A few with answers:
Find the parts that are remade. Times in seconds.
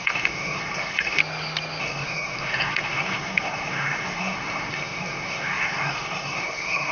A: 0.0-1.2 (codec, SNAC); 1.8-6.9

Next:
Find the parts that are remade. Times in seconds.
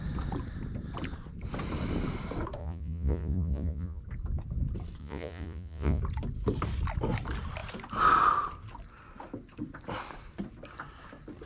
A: 2.6-4.0 (vocoder, Vocos); 5.0-6.0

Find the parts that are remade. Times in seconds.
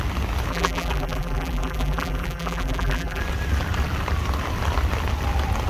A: 0.5-3.2 (vocoder, BigVGAN v2)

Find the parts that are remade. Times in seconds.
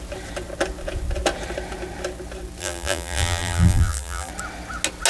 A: 2.6-4.3 (vocoder, BigVGAN v2)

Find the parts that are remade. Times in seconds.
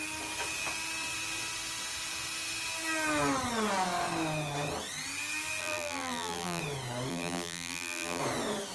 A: 5.6-6.6 (vocoder, BigVGAN v2); 7.1-8.2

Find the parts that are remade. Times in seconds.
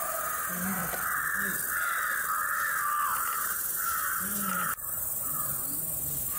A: 0.0-0.8 (vocoder, BigVGAN v2); 3.2-6.4